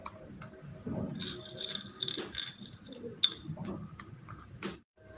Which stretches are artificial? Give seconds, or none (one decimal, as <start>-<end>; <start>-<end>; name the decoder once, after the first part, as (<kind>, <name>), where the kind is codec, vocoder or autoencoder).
none